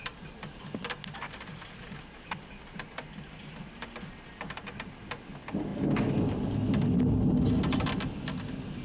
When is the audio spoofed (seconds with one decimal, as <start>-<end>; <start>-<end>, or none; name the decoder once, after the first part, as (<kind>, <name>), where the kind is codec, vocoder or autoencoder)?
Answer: none